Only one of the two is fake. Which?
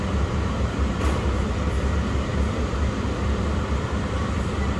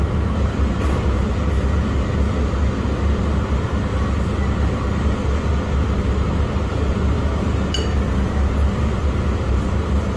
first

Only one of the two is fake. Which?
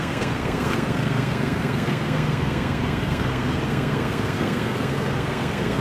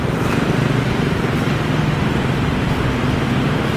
first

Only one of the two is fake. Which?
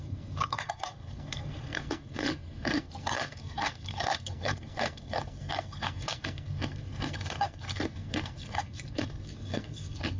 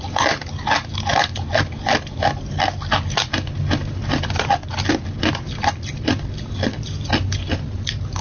first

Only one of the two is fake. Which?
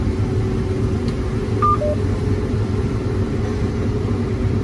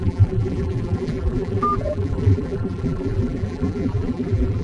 second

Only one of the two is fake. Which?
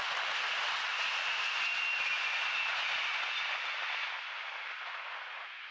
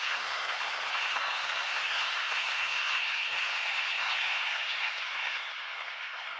second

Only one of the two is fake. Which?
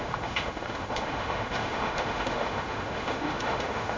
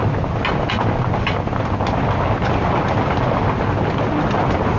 first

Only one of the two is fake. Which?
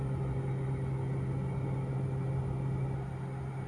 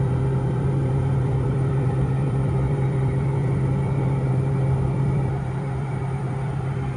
second